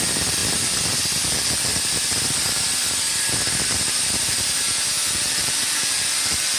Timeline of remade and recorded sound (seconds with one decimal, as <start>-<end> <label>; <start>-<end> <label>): 0.0-0.4 recorded; 0.4-1.2 remade; 1.2-1.7 recorded; 1.7-4.8 remade; 4.8-6.6 recorded